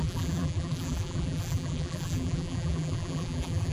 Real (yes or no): no